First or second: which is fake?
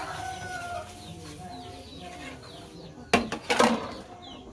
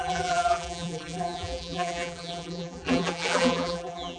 second